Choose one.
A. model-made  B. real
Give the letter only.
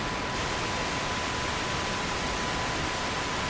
B